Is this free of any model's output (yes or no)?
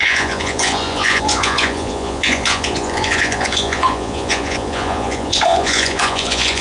no